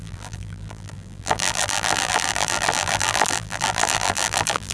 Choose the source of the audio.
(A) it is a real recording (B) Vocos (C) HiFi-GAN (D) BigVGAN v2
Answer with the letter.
D